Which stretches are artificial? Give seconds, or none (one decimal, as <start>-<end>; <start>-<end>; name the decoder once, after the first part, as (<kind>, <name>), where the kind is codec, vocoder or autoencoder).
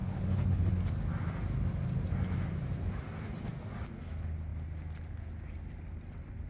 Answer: 0.0-0.7 (codec, HILCodec)